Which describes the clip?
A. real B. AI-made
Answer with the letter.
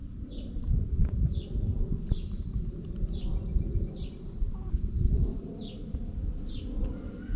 A